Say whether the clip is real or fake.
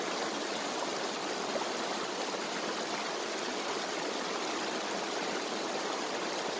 real